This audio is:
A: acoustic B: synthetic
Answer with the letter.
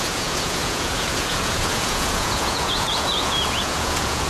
B